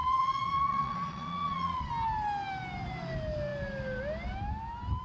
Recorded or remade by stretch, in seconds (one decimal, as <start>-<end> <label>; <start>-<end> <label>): 0.0-1.9 remade; 1.9-5.0 recorded